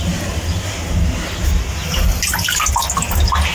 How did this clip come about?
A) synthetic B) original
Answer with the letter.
B